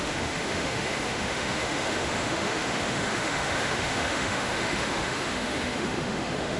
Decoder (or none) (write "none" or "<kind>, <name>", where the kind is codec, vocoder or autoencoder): autoencoder, DAC-VAE